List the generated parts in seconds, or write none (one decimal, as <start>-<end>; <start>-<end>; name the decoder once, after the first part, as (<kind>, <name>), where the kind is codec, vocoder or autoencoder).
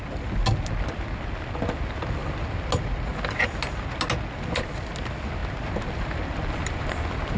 none